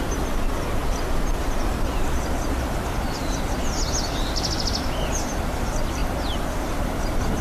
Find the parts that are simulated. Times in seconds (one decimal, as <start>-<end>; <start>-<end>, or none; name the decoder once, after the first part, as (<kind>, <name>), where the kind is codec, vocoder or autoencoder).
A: none